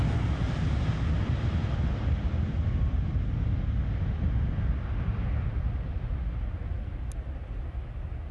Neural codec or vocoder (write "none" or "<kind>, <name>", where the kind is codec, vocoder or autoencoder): none